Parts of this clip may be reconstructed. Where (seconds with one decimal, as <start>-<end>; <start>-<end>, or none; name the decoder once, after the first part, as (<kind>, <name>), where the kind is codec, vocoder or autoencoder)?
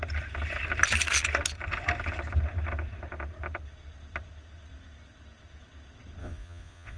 6.2-7.0 (vocoder, Vocos)